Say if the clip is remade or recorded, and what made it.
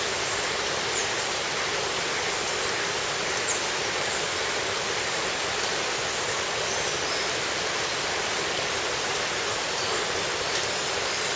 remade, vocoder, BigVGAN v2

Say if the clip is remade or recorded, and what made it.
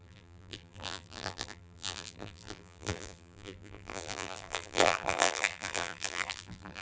remade, vocoder, BigVGAN v2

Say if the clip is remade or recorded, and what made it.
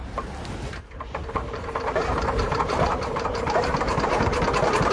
remade, vocoder, BigVGAN v2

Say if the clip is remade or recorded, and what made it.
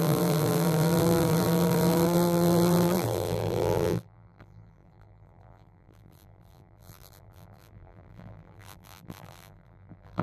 remade, vocoder, BigVGAN v2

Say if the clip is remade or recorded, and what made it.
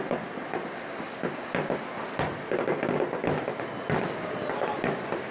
recorded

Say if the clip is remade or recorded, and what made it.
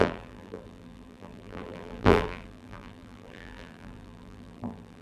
remade, vocoder, BigVGAN v2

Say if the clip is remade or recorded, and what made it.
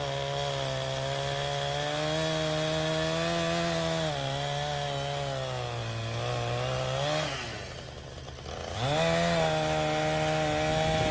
recorded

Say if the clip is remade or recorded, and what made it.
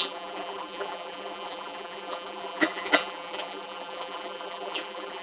remade, vocoder, BigVGAN v2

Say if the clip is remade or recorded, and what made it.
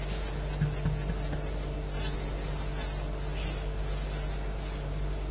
recorded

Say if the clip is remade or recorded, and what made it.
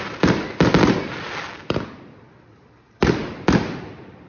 remade, vocoder, BigVGAN v2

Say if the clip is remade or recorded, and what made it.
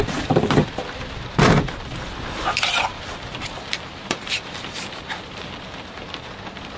remade, vocoder, BigVGAN v2